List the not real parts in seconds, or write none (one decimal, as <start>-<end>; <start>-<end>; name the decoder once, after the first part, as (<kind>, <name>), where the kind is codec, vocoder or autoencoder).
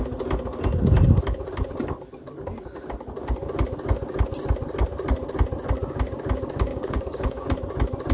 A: 6.7-7.4 (codec, DAC)